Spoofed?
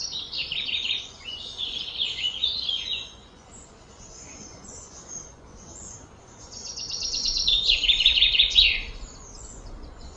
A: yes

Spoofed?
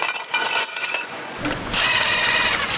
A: yes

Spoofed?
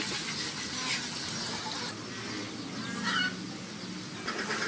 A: no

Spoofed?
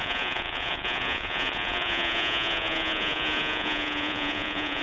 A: yes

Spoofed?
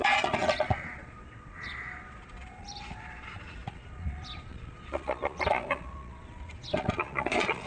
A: yes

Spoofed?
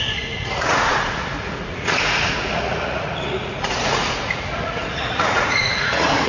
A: yes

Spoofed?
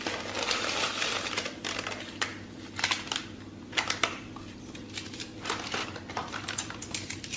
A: no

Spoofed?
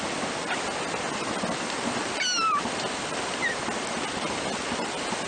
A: no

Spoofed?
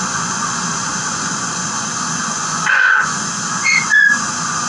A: yes